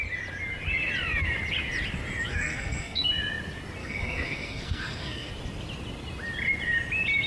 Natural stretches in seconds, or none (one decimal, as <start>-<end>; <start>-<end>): 0.0-2.3; 3.1-3.8; 5.3-7.3